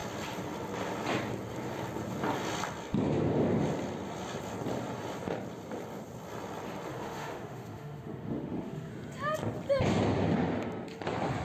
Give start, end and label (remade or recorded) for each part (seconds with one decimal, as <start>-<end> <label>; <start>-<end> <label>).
0.0-6.9 recorded; 6.9-8.9 remade; 8.9-11.4 recorded